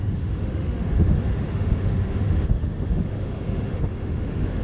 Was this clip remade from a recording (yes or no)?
yes